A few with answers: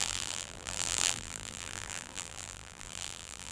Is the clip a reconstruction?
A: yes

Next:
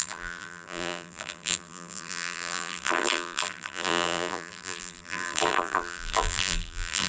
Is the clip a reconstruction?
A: yes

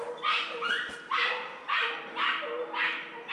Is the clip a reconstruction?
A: no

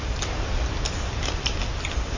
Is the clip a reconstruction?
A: no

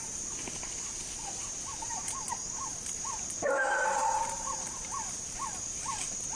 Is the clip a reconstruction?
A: yes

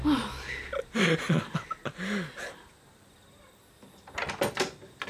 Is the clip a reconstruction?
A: no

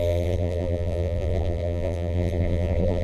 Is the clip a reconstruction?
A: yes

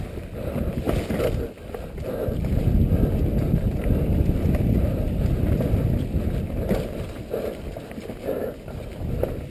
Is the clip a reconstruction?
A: no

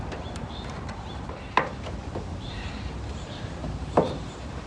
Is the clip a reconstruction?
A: yes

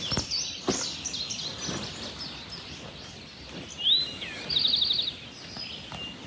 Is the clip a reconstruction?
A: no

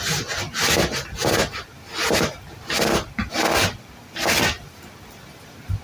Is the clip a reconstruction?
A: no